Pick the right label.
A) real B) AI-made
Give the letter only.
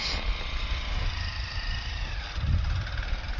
A